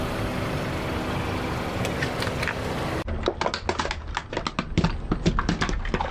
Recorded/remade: recorded